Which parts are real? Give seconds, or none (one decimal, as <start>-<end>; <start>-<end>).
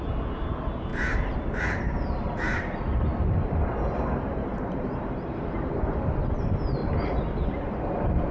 0.0-0.9; 5.9-6.8